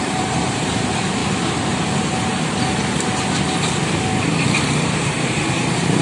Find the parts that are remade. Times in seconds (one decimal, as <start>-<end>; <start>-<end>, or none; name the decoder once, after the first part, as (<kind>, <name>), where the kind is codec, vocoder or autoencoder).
0.0-1.2 (vocoder, BigVGAN v2); 4.8-6.0